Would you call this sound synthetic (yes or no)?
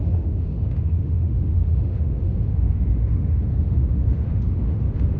yes